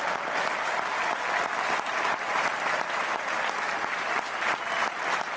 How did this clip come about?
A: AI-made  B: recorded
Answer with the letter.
B